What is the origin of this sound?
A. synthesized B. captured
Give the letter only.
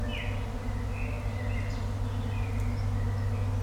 B